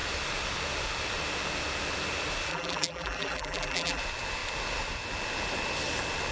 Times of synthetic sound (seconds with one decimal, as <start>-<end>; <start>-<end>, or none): 2.5-4.0

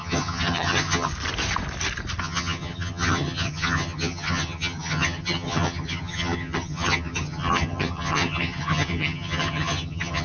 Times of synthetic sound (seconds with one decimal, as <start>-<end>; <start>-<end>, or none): 0.0-1.1; 2.2-10.2

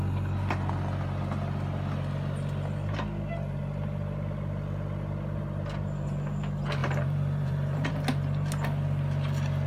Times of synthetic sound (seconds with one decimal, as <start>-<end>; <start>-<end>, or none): 6.8-7.9

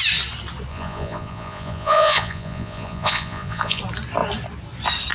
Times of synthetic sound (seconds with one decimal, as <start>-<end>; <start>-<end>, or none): 0.7-3.8

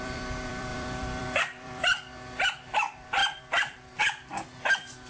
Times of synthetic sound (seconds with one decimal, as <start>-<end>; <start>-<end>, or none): 0.0-5.1

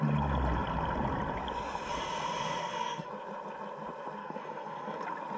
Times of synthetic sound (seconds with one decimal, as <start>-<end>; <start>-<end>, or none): 2.6-3.1; 4.2-5.0

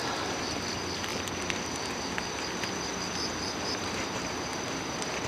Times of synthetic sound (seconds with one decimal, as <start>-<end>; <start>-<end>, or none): 0.0-0.6; 1.1-4.3

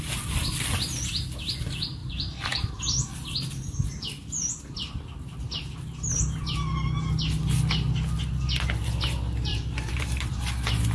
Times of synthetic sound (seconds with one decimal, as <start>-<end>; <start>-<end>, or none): 2.0-2.8; 9.5-10.4